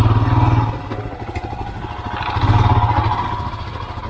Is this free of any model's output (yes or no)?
yes